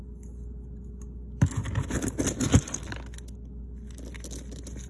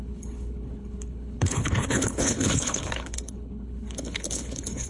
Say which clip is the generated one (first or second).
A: second